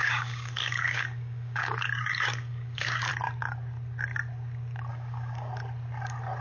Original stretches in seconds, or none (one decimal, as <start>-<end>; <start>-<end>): 3.1-4.9; 5.5-6.4